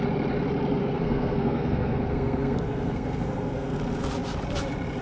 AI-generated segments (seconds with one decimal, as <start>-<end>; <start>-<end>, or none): 0.8-3.8